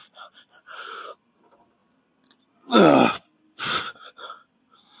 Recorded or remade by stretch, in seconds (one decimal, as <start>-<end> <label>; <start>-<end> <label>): 0.0-5.0 recorded